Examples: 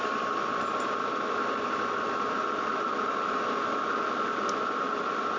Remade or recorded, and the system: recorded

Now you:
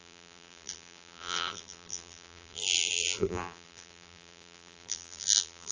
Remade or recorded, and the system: remade, vocoder, BigVGAN v2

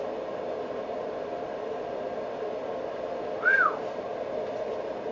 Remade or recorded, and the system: recorded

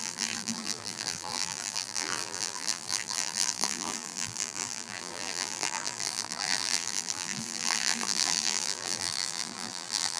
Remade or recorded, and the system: remade, vocoder, BigVGAN v2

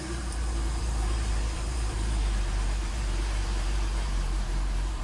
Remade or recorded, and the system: remade, vocoder, BigVGAN v2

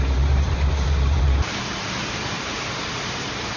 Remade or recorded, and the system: remade, vocoder, BigVGAN v2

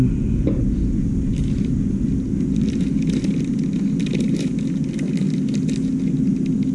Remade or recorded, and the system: recorded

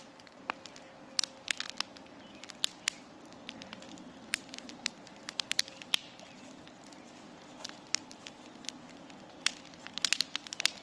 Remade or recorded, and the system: recorded